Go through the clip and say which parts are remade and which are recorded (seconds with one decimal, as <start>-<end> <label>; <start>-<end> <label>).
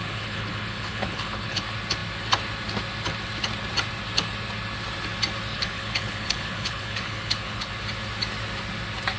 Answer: 0.0-1.6 remade; 1.6-5.5 recorded; 5.5-7.7 remade; 7.7-9.2 recorded